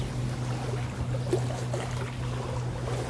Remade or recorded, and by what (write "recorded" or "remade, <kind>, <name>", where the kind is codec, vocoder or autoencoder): recorded